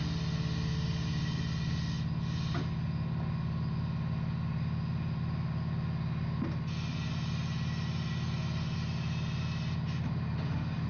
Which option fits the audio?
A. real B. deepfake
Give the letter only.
A